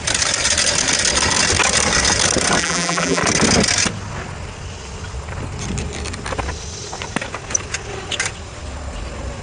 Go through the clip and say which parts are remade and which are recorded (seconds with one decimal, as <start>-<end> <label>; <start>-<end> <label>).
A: 0.0-2.6 recorded; 2.6-3.2 remade; 3.2-9.4 recorded